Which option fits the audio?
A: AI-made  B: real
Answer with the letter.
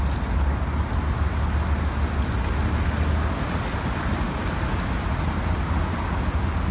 B